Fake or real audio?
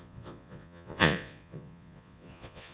fake